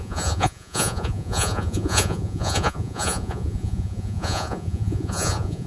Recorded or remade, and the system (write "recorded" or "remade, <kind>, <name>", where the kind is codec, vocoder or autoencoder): remade, vocoder, Vocos